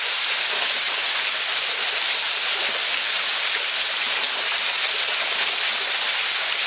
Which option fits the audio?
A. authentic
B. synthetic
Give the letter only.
A